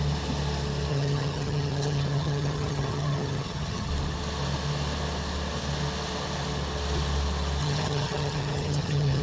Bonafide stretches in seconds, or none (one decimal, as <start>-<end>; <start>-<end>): 0.0-0.9; 3.9-7.6